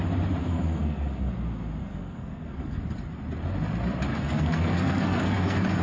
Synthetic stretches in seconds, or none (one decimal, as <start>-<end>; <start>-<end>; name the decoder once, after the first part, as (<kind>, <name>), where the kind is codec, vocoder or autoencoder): 0.4-1.3 (codec, SNAC); 1.8-2.8; 4.1-5.8